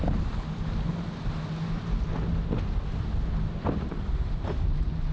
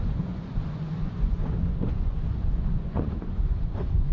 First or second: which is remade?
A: second